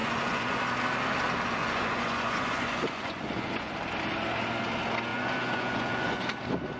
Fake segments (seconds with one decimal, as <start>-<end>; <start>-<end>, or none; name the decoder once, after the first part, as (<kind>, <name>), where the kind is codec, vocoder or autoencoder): 0.0-0.6 (vocoder, Vocos); 1.6-3.7; 5.1-6.2